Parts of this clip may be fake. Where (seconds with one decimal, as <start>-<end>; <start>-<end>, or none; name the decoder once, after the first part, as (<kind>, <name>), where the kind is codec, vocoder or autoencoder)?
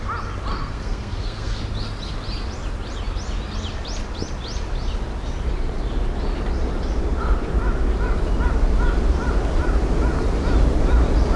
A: 0.5-1.6 (codec, SNAC)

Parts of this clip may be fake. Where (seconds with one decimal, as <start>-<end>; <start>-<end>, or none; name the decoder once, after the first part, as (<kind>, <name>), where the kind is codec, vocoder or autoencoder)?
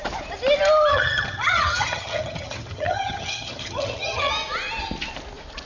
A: 0.9-4.3 (vocoder, HiFi-GAN)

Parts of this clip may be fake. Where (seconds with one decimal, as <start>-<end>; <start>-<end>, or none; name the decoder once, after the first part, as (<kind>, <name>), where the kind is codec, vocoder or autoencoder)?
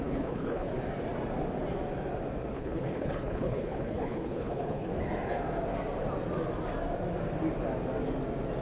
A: 0.0-0.7 (codec, HILCodec); 2.5-4.9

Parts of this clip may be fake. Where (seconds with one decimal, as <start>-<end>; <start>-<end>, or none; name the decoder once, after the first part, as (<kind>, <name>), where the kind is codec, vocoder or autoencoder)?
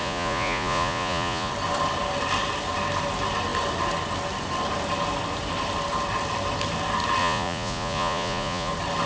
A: 0.0-1.5 (vocoder, Vocos); 7.2-8.7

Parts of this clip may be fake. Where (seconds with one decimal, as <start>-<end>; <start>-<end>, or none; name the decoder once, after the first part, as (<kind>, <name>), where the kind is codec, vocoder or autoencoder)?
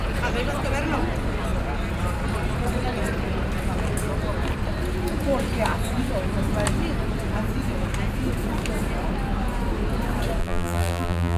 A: 10.4-11.4 (vocoder, BigVGAN v2)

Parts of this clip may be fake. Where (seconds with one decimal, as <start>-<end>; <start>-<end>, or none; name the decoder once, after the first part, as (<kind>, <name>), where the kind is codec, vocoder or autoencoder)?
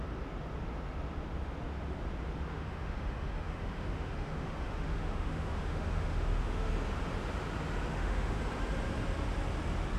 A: 2.5-6.7 (autoencoder, DAC-VAE); 7.9-8.4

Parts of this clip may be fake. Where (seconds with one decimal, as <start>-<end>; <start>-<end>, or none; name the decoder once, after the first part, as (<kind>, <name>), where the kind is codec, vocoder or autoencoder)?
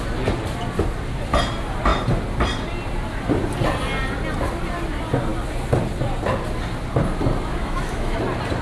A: 7.5-8.2 (autoencoder, DAC-VAE)